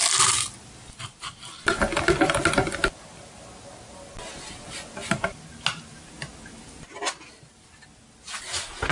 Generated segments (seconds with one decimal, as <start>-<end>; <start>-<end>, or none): none